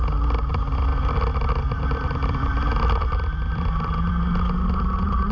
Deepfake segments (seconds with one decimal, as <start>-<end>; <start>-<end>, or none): 0.9-4.1